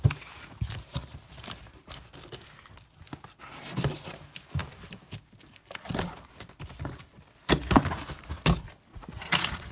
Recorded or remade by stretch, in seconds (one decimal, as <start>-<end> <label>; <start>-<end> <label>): 0.0-8.9 recorded; 8.9-9.7 remade